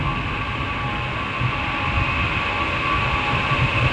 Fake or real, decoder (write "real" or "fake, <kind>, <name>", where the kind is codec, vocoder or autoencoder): real